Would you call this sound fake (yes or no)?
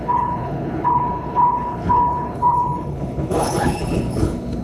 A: yes